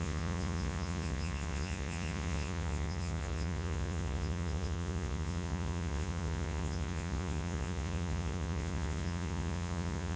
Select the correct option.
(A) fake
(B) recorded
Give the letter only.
A